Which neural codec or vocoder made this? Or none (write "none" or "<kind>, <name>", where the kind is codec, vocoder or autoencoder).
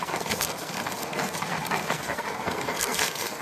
codec, SNAC